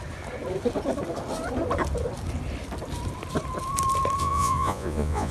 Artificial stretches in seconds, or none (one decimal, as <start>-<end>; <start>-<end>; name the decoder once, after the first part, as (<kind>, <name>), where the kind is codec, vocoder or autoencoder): 4.2-5.3 (vocoder, Vocos)